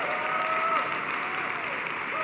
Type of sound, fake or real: fake